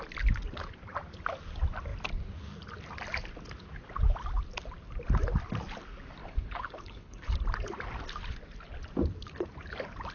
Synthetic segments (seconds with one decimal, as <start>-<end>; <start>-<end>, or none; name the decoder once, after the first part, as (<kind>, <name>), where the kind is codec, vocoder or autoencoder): 6.2-7.3 (codec, HILCodec)